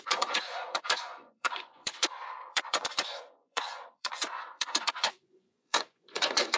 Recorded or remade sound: remade